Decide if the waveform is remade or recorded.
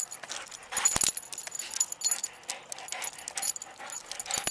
recorded